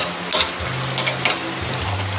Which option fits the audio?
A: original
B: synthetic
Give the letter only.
A